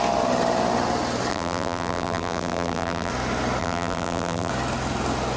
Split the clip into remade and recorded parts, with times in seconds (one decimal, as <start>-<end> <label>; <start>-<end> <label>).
0.0-1.3 recorded; 1.3-3.1 remade; 3.1-3.6 recorded; 3.6-4.5 remade; 4.5-5.4 recorded